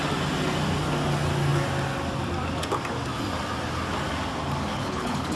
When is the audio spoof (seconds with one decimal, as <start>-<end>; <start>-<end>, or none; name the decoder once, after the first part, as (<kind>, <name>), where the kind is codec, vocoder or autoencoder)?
4.7-5.4 (codec, HILCodec)